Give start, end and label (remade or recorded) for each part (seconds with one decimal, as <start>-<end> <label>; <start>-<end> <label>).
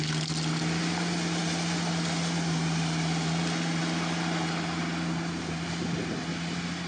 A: 0.0-6.9 recorded